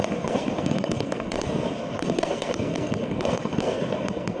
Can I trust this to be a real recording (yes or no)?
no